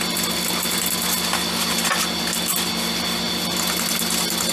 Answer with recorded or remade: recorded